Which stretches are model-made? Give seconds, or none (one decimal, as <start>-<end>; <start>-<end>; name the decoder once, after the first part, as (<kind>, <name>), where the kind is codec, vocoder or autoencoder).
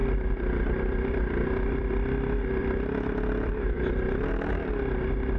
0.0-1.9 (vocoder, BigVGAN v2); 2.6-4.5